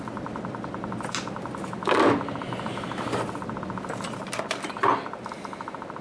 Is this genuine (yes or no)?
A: yes